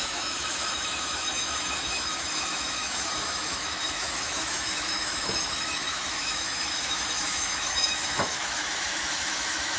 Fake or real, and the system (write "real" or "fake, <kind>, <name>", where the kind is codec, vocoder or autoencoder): fake, autoencoder, DAC-VAE